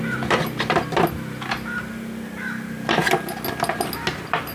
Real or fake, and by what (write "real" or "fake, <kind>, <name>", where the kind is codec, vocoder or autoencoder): real